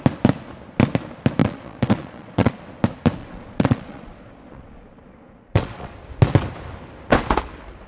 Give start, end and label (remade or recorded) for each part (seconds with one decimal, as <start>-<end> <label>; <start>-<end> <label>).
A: 0.0-1.4 recorded; 1.4-2.6 remade; 2.6-3.2 recorded; 3.2-5.9 remade; 5.9-7.9 recorded